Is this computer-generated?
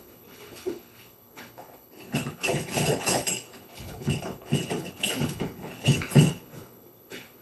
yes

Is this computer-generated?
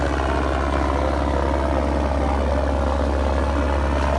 no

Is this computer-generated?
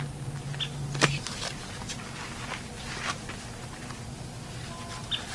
no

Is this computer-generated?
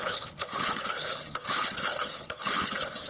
yes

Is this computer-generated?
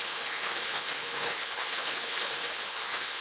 yes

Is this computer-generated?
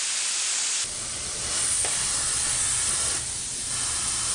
no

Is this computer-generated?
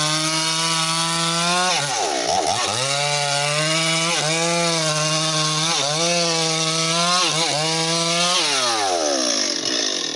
no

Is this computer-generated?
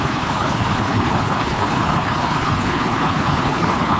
yes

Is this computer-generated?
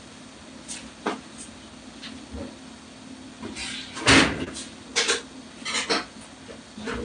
no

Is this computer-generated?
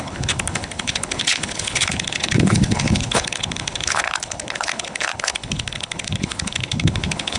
yes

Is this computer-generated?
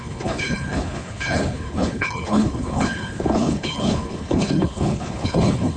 yes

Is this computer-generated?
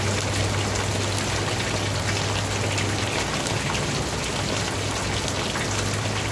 no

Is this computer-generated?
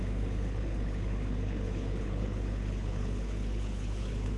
yes